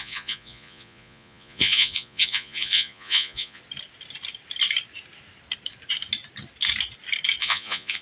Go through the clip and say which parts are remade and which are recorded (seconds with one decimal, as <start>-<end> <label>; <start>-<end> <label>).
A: 0.0-3.6 remade; 3.6-7.4 recorded; 7.4-8.0 remade

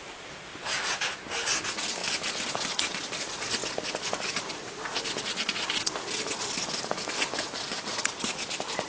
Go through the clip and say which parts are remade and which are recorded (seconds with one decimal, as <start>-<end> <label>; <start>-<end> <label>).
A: 0.0-8.9 recorded